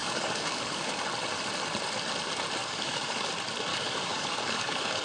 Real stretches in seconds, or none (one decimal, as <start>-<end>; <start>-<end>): 1.0-2.6; 3.2-3.7